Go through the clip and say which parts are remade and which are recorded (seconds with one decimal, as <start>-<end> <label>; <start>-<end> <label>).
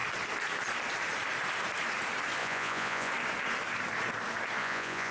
0.0-2.4 recorded; 2.4-3.1 remade; 3.1-4.6 recorded; 4.6-5.1 remade